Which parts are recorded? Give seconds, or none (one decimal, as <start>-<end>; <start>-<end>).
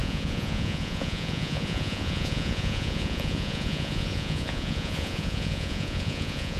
none